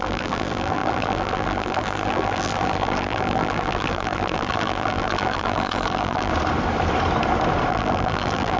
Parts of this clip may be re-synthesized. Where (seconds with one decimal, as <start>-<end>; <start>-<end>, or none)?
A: 0.0-6.3; 7.7-8.6